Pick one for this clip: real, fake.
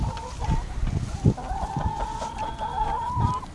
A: real